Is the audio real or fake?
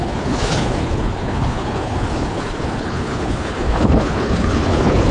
fake